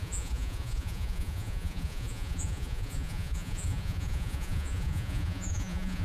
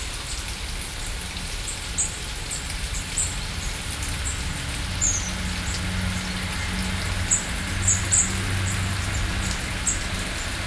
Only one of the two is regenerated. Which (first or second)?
first